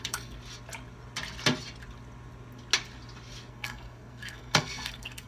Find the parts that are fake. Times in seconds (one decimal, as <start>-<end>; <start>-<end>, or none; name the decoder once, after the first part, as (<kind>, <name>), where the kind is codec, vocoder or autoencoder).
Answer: 0.0-0.4 (codec, SNAC); 3.5-5.3